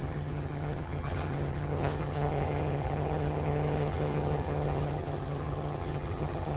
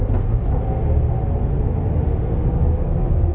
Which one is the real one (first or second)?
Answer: second